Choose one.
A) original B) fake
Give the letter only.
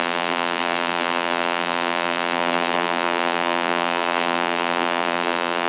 B